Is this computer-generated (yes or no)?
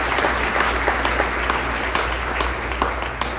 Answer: no